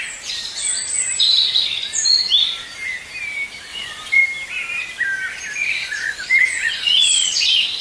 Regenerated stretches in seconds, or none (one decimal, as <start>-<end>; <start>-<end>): 3.7-4.2; 5.8-7.1